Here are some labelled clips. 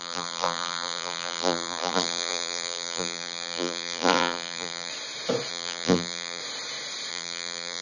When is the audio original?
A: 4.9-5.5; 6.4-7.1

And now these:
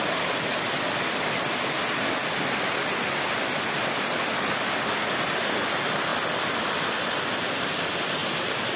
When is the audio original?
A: 0.0-8.2

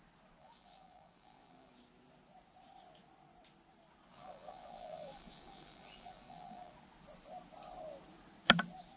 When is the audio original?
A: 0.0-0.4; 1.7-4.1; 6.7-9.0

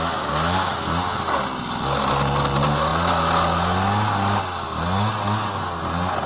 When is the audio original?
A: 0.0-6.3